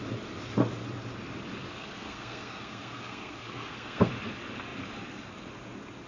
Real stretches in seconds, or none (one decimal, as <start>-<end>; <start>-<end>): 0.0-1.7; 4.1-6.1